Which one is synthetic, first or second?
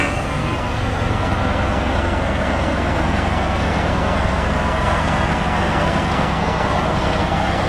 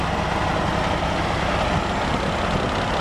first